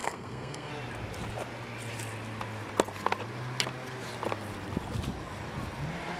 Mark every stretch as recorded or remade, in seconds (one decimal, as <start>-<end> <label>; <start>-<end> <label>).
0.0-0.7 remade; 0.7-6.2 recorded